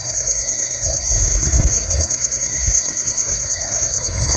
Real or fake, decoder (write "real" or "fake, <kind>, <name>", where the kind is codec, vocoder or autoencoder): fake, codec, SNAC